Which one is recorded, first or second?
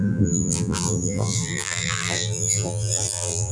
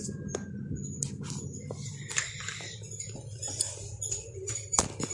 second